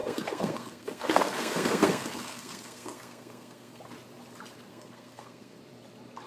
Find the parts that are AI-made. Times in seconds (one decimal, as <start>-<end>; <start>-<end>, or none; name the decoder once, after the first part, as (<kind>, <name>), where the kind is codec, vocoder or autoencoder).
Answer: 0.0-3.8 (codec, SNAC); 4.7-5.6